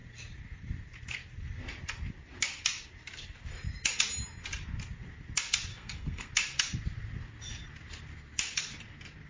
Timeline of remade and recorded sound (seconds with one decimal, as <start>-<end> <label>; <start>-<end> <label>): 0.0-5.7 recorded; 5.7-6.3 remade; 6.3-9.3 recorded